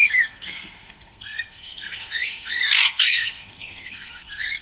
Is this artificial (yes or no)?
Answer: yes